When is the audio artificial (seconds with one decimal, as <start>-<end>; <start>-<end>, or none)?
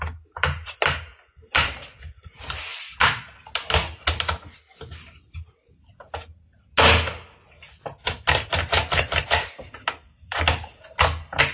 none